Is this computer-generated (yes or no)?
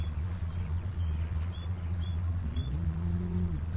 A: yes